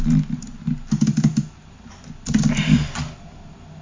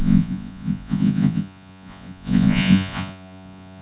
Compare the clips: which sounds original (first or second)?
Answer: first